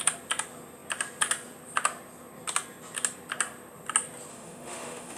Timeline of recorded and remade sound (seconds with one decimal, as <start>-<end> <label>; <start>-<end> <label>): 0.0-4.3 recorded; 4.3-5.2 remade